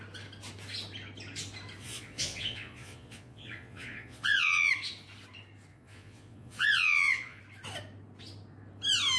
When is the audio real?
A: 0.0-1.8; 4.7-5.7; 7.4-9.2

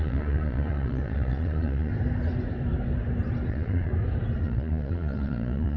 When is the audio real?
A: 1.9-3.5; 3.9-4.4

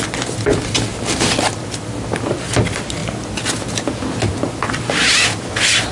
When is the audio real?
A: 0.0-5.9

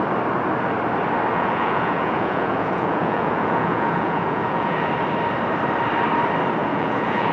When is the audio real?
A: 0.0-1.3; 4.9-6.6